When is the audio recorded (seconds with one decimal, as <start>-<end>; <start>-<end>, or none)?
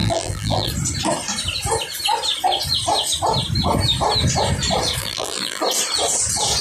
0.7-5.0; 5.6-6.6